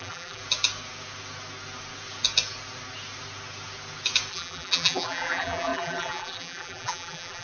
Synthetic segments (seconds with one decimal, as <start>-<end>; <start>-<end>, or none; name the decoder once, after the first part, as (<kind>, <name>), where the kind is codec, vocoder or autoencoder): 0.0-0.4 (vocoder, BigVGAN v2); 4.3-7.4